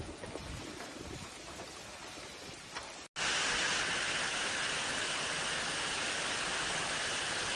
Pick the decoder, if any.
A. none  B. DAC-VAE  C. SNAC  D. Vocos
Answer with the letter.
A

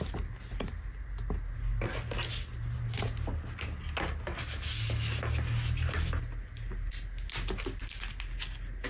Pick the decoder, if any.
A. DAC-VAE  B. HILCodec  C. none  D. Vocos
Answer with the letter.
C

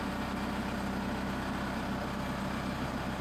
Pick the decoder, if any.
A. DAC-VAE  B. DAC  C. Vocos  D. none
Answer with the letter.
D